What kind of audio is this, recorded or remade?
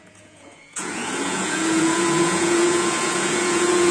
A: remade